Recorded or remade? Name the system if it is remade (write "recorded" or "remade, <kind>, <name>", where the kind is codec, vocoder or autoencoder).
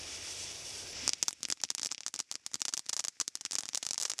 recorded